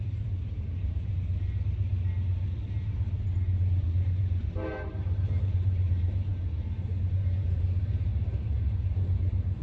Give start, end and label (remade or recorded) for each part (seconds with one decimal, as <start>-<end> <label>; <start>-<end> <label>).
0.0-1.1 remade; 1.1-3.7 recorded; 3.7-6.3 remade; 6.3-7.1 recorded; 7.1-8.1 remade; 8.1-9.6 recorded